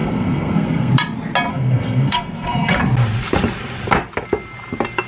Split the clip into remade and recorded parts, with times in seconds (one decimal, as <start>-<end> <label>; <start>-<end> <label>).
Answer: 0.0-0.9 remade; 0.9-1.5 recorded; 1.5-2.8 remade; 2.8-5.1 recorded